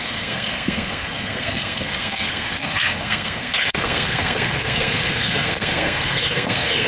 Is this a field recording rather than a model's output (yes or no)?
no